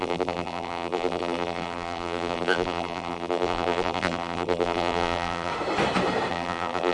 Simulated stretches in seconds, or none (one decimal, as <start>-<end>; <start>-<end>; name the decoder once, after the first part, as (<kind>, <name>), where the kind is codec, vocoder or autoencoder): 0.0-5.5 (vocoder, BigVGAN v2); 6.3-6.9